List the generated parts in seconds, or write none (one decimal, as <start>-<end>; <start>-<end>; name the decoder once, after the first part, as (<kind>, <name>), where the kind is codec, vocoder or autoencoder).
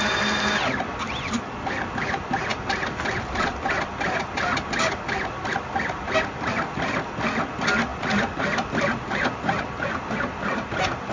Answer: 7.9-9.6 (vocoder, BigVGAN v2)